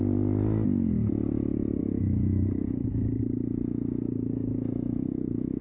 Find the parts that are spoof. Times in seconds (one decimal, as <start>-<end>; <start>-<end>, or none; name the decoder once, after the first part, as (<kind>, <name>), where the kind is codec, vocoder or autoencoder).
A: 1.8-5.6 (autoencoder, DAC-VAE)